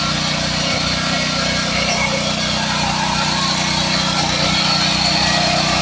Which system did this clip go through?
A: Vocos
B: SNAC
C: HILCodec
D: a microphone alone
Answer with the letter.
D